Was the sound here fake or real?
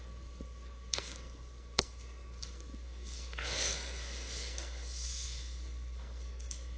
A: fake